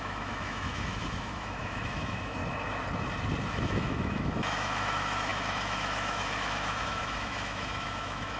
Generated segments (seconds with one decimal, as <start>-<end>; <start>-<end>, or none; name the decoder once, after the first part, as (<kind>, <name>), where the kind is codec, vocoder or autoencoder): 0.0-2.4 (autoencoder, DAC-VAE); 3.5-8.4